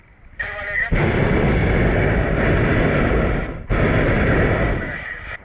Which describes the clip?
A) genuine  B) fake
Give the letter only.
A